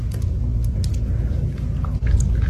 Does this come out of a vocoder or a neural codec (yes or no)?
no